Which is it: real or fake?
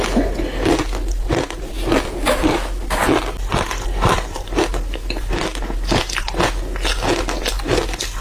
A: real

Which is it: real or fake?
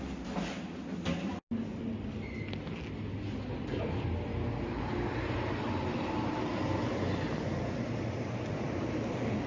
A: real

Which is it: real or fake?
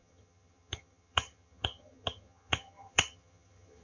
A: fake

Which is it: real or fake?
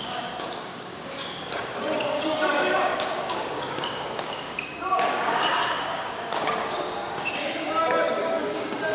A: fake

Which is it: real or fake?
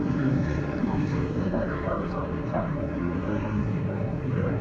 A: fake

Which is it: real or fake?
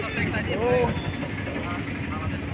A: real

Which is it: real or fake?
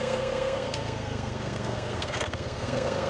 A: fake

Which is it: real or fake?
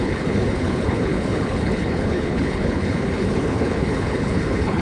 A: fake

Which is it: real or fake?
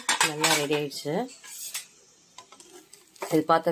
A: real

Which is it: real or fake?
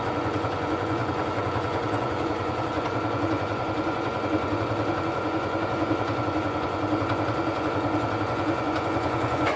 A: fake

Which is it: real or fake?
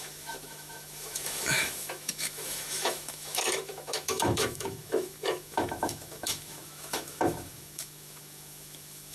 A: fake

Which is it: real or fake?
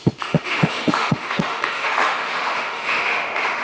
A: fake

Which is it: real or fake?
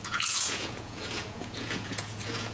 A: fake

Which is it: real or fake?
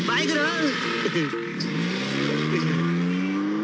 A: real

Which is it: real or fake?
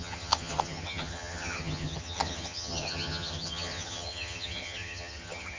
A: fake